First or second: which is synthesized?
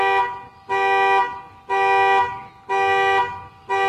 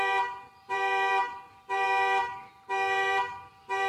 second